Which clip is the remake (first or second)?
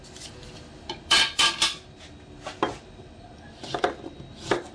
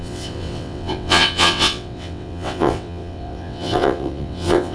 second